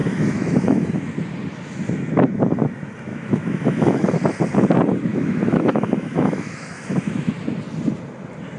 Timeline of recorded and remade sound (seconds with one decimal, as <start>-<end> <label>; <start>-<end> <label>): 0.0-1.0 remade; 1.0-3.1 recorded; 3.1-4.2 remade; 4.2-5.1 recorded; 5.1-7.3 remade; 7.3-8.6 recorded